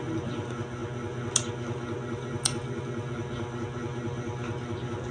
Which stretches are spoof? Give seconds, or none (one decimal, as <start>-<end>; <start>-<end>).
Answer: none